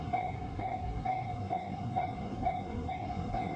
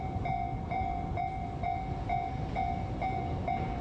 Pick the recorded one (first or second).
second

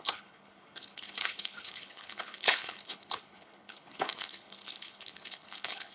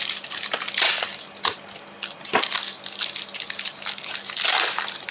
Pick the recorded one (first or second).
second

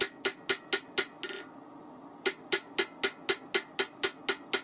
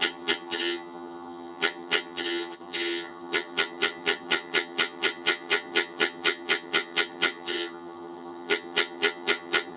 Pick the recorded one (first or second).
first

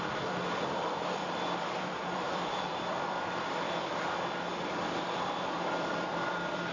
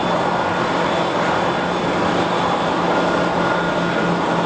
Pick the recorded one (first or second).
second